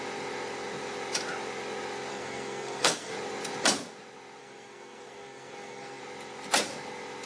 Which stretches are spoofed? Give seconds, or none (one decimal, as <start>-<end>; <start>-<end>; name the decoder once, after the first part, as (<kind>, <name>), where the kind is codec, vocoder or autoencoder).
2.1-3.1 (codec, SNAC); 4.4-6.0